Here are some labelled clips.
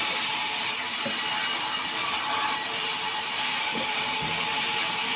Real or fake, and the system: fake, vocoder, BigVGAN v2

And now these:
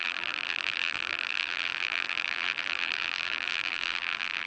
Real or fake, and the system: fake, vocoder, BigVGAN v2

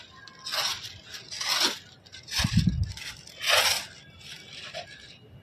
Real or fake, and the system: real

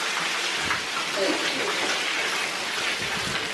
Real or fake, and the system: real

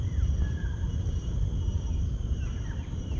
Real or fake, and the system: fake, vocoder, BigVGAN v2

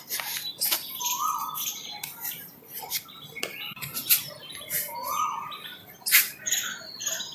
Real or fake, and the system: fake, vocoder, BigVGAN v2